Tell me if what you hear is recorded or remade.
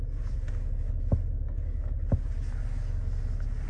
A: recorded